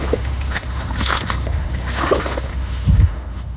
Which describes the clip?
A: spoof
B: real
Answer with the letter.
A